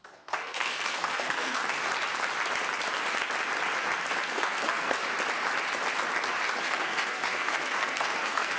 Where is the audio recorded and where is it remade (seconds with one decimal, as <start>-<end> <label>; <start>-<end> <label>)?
0.0-1.6 remade; 1.6-4.2 recorded; 4.2-5.0 remade; 5.0-6.6 recorded; 6.6-8.6 remade

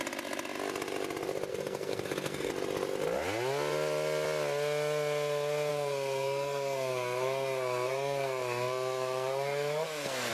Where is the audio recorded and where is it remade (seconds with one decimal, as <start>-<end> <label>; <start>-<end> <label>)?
0.0-1.5 recorded; 1.5-2.5 remade; 2.5-5.7 recorded; 5.7-10.3 remade